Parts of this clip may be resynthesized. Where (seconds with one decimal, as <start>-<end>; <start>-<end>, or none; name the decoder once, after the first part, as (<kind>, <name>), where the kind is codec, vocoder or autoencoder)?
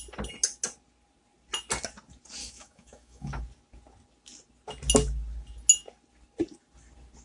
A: 2.4-3.4 (autoencoder, DAC-VAE)